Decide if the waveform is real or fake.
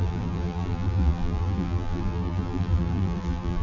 fake